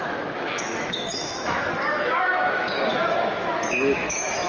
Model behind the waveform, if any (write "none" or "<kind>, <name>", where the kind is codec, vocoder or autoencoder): autoencoder, DAC-VAE